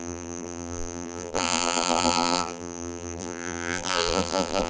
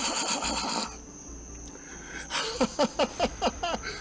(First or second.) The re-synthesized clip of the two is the first